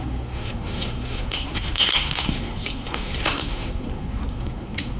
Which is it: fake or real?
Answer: fake